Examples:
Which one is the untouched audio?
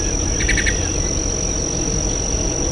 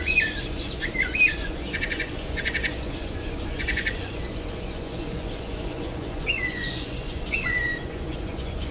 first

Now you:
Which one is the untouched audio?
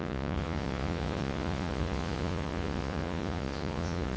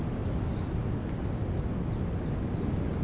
second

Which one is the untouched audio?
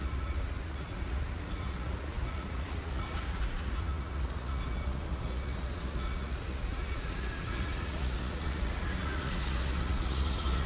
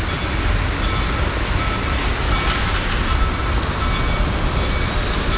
second